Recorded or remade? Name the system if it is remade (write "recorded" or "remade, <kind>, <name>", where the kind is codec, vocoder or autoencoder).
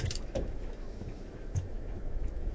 remade, autoencoder, DAC-VAE